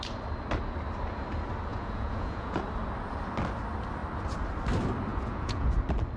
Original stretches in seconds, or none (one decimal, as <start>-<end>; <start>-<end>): 0.0-1.7; 2.6-5.1; 5.7-6.2